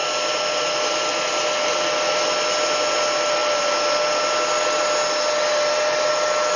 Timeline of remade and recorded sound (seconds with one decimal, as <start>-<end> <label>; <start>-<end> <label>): 0.0-6.6 recorded